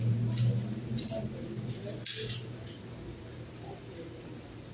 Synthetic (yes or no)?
no